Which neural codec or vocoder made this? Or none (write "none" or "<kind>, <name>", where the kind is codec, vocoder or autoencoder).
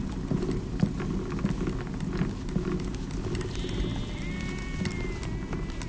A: none